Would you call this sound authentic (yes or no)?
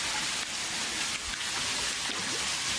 yes